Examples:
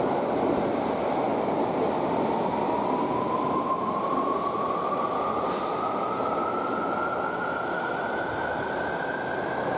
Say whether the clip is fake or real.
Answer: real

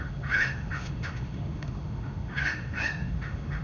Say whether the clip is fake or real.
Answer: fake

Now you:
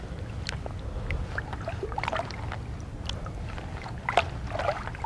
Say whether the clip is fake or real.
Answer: real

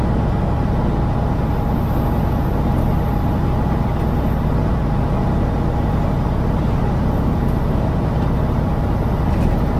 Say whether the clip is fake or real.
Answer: real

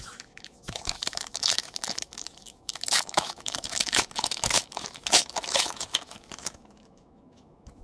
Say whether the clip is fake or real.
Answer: fake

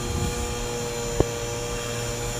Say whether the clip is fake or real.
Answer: real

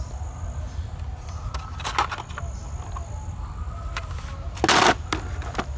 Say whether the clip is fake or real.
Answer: real